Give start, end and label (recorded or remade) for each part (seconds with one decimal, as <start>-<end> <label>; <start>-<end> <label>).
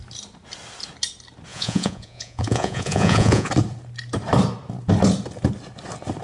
0.0-1.5 recorded; 1.5-3.5 remade; 3.5-6.2 recorded